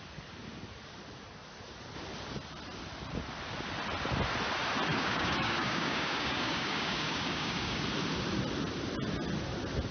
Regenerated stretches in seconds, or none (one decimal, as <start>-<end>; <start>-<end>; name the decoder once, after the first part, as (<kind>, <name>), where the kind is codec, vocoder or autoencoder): 4.9-7.8 (codec, DAC)